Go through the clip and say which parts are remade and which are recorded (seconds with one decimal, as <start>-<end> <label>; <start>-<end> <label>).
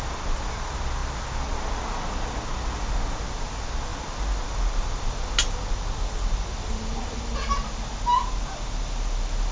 0.0-9.5 recorded